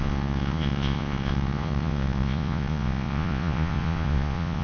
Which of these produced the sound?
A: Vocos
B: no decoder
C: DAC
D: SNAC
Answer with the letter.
A